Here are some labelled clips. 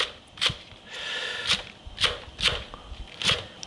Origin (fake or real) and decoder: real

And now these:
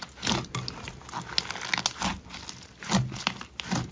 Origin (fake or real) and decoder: real